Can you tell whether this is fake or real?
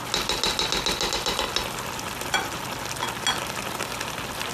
real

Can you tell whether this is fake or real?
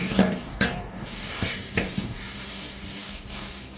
fake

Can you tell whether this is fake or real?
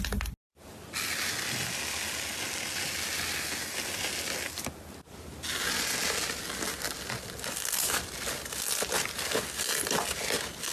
real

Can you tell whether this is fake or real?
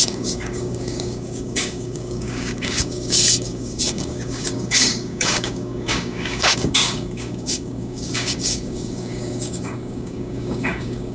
fake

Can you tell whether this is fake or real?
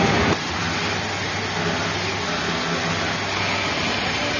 real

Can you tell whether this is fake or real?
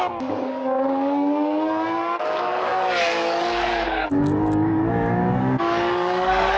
fake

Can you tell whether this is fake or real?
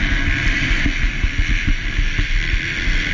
real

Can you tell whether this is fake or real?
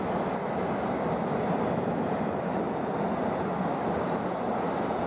real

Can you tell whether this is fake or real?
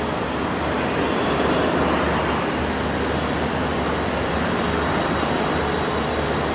real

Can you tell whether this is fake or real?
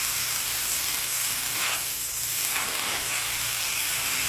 fake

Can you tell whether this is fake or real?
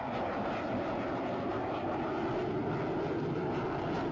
real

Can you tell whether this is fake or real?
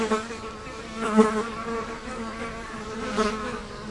fake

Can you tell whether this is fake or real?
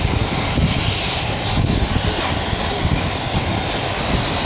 real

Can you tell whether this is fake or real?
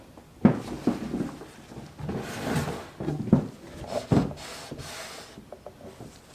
real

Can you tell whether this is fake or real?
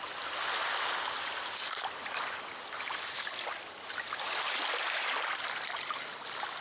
real